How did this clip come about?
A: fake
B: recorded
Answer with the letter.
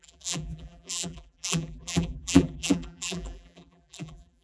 A